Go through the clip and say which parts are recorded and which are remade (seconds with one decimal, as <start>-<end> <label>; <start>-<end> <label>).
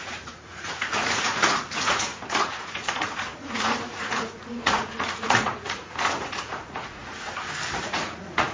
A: 0.0-7.0 remade; 7.0-7.8 recorded; 7.8-8.5 remade